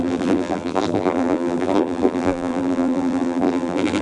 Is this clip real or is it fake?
fake